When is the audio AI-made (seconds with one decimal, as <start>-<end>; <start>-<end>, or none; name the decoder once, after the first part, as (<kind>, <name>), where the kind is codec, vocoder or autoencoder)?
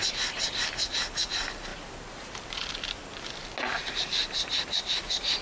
none